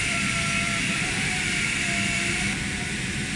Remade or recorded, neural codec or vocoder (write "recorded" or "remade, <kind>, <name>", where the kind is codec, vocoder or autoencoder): remade, vocoder, BigVGAN v2